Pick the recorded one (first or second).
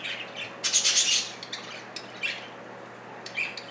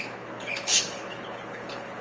first